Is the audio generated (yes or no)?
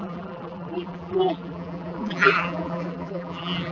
yes